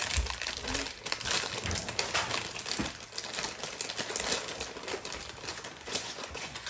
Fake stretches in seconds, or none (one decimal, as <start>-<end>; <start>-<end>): 5.5-6.7

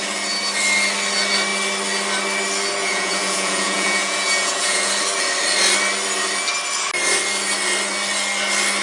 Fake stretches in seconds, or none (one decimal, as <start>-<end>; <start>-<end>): 2.8-4.9

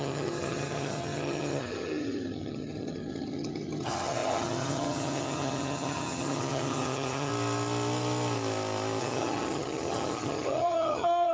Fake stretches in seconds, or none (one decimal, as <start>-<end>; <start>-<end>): 0.0-7.3; 9.0-11.3

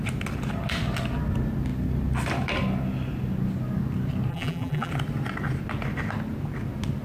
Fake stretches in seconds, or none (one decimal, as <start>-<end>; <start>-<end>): 4.3-4.9

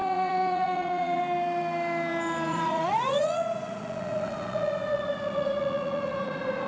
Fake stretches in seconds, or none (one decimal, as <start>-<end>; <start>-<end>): 0.0-1.2; 2.5-6.7

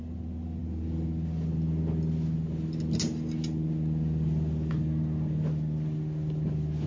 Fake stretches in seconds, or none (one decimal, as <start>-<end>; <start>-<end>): none